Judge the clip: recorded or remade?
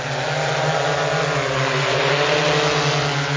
recorded